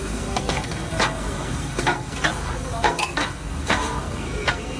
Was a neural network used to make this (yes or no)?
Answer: yes